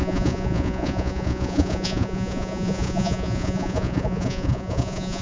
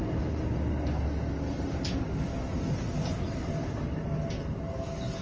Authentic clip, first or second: second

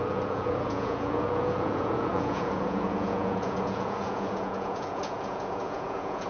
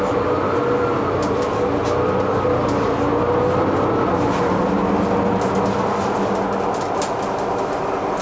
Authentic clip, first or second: second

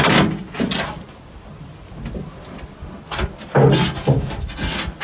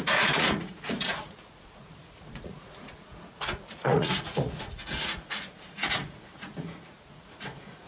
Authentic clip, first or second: first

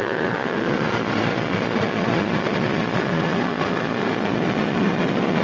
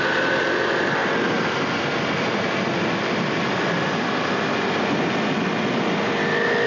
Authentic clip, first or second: second